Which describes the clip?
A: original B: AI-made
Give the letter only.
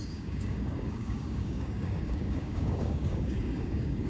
B